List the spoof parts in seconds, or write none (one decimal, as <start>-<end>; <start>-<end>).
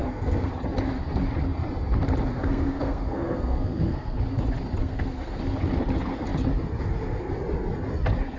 0.0-0.5; 2.3-4.2; 4.8-5.4